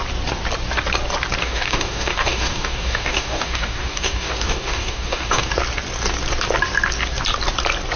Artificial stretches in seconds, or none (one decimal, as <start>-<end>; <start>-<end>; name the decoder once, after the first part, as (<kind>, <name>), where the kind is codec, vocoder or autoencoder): 1.4-5.5 (codec, DAC)